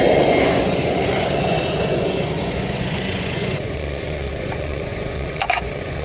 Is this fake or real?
fake